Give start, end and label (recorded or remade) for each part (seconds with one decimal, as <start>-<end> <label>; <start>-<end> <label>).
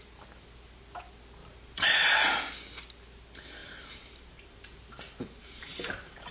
0.0-1.4 recorded; 1.4-2.1 remade; 2.1-3.6 recorded; 3.6-6.3 remade